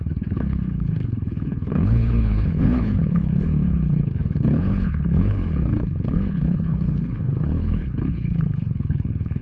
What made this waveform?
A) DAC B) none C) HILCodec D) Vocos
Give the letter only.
C